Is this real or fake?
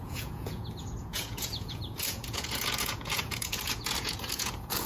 fake